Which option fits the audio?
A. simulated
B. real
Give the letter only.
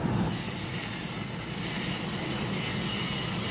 B